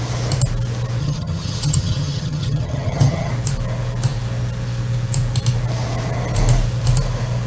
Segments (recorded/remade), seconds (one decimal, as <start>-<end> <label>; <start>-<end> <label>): 0.0-1.0 recorded; 1.0-3.3 remade; 3.3-7.5 recorded